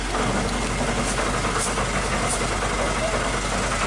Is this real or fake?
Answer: real